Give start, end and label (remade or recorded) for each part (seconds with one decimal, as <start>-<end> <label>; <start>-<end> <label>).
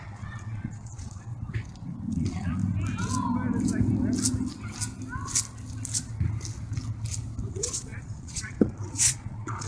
0.0-1.3 remade; 1.3-2.1 recorded; 2.1-2.6 remade; 2.6-7.5 recorded; 7.5-9.7 remade